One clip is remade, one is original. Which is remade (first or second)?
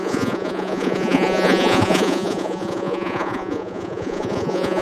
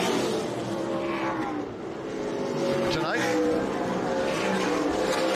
first